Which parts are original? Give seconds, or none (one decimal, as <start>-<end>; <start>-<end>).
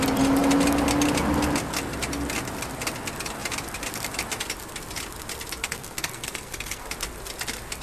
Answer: 0.0-5.6; 6.9-7.8